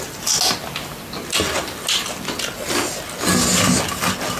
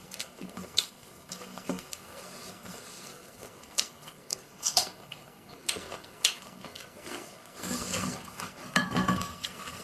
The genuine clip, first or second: first